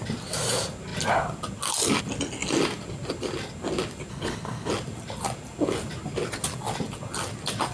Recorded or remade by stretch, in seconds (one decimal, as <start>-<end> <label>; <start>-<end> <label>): 0.0-4.1 recorded; 4.1-4.7 remade; 4.7-7.7 recorded